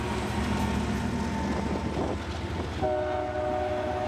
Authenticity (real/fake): real